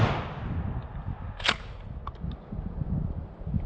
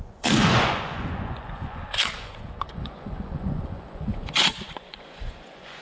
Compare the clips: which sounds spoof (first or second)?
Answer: second